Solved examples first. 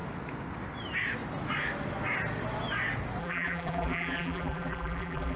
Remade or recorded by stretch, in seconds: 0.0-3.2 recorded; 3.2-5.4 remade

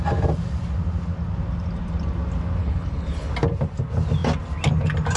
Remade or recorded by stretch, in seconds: 0.0-2.6 recorded; 2.6-3.3 remade; 3.3-5.2 recorded